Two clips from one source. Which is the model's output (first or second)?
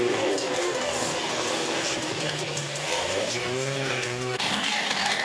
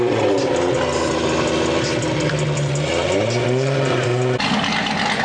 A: first